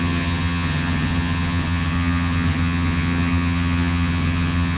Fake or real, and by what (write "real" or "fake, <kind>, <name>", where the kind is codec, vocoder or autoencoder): fake, vocoder, HiFi-GAN